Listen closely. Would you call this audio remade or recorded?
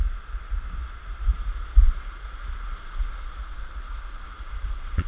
recorded